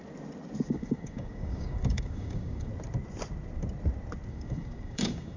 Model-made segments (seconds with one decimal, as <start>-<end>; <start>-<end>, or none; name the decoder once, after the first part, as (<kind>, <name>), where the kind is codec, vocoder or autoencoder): 0.7-2.7 (codec, DAC); 4.3-5.4